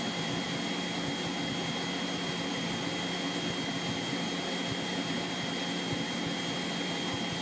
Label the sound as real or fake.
real